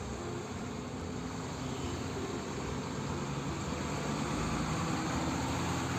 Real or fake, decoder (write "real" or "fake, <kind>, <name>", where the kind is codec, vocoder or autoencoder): real